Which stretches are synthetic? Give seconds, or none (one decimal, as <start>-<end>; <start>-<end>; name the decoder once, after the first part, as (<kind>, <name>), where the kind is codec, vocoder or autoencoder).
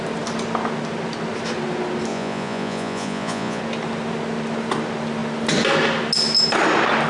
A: 2.1-3.6 (vocoder, Vocos)